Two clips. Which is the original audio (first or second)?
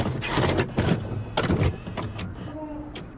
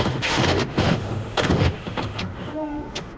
first